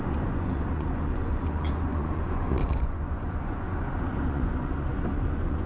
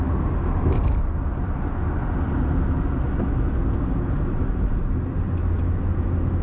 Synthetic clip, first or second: first